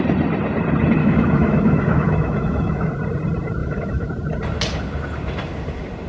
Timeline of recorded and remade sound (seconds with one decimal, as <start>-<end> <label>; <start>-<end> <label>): 0.0-1.0 recorded; 1.0-2.9 remade; 2.9-3.6 recorded; 3.6-4.1 remade; 4.1-6.1 recorded